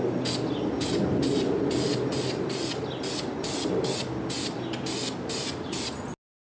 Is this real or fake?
real